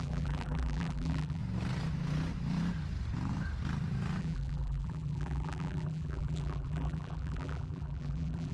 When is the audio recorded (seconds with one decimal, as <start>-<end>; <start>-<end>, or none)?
1.4-4.2